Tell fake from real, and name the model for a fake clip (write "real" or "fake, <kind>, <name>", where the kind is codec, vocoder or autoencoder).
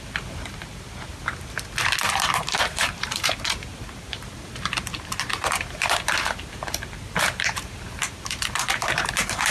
fake, vocoder, BigVGAN v2